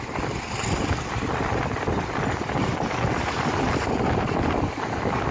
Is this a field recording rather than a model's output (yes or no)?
no